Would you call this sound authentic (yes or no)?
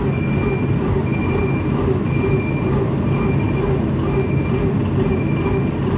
yes